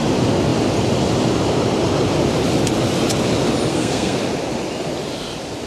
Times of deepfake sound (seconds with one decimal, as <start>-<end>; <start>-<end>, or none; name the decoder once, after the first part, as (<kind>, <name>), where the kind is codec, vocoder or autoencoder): 3.7-4.2 (codec, SNAC)